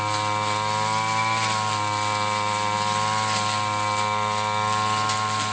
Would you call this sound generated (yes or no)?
no